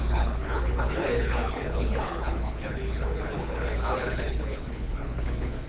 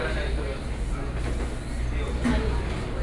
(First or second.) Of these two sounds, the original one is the second